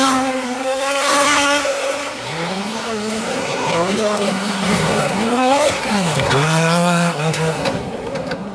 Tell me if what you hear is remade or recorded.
remade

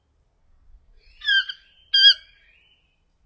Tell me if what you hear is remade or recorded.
recorded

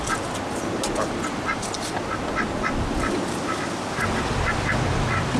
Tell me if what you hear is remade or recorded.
recorded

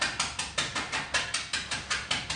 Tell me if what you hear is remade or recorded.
recorded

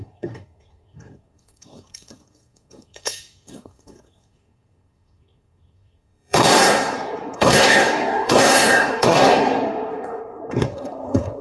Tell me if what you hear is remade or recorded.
remade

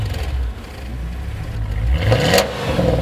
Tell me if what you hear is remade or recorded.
recorded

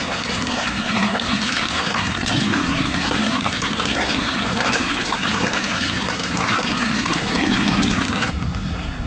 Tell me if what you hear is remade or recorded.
remade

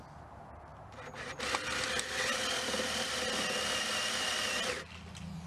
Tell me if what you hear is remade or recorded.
recorded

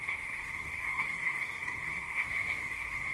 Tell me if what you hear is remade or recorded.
remade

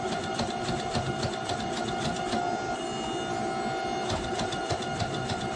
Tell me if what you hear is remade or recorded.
recorded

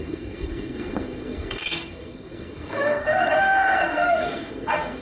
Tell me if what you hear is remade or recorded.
remade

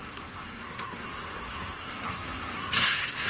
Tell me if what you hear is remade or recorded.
remade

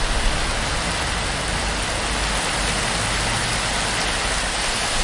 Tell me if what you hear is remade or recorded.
recorded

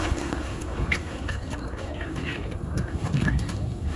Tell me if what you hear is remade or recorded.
remade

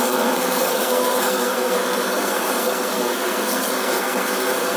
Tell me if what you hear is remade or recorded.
remade